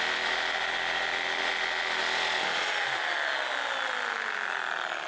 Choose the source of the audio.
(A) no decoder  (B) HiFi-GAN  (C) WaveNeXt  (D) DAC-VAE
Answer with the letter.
A